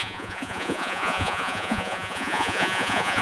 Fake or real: fake